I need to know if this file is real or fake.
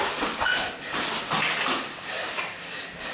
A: real